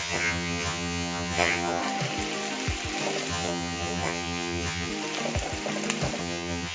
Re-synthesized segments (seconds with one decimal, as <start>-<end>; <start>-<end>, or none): 0.0-1.8; 3.3-4.9; 6.2-6.7